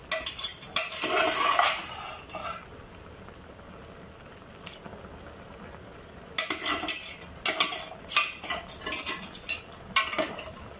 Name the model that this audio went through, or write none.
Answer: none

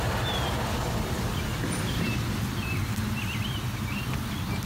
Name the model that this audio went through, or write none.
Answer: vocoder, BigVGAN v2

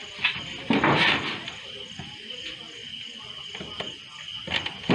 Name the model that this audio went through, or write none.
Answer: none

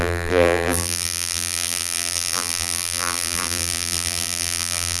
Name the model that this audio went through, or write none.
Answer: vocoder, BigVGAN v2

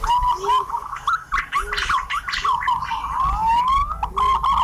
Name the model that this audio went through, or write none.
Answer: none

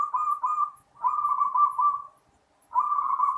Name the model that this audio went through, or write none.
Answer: none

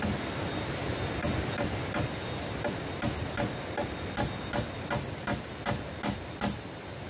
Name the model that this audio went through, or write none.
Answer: none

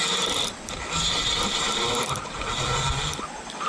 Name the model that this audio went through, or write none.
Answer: none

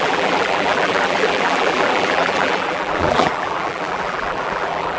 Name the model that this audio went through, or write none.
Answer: vocoder, BigVGAN v2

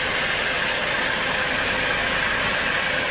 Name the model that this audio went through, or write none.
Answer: vocoder, BigVGAN v2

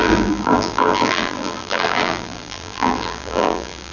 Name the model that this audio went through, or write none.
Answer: vocoder, BigVGAN v2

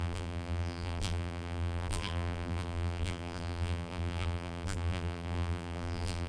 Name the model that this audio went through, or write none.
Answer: vocoder, BigVGAN v2